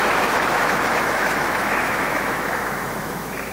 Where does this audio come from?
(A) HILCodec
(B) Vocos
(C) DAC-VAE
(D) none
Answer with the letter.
C